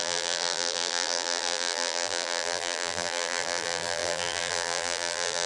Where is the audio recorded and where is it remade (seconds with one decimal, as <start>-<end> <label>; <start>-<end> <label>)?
0.0-5.5 remade